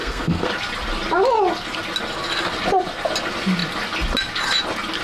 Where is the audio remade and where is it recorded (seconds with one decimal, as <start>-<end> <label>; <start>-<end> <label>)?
0.0-0.5 remade; 0.5-5.0 recorded